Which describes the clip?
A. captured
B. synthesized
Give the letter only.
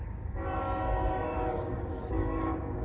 B